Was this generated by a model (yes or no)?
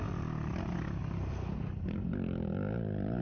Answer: no